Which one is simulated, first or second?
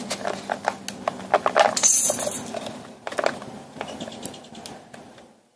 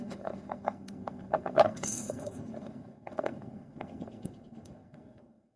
second